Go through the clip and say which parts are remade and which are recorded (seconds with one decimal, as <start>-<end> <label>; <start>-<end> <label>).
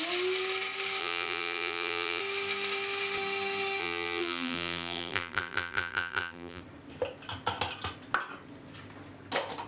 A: 0.0-1.0 recorded; 1.0-2.2 remade; 2.2-3.8 recorded; 3.8-6.6 remade; 6.6-9.7 recorded